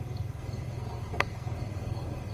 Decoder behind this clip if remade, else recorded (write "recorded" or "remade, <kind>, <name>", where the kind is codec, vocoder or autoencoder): remade, codec, SNAC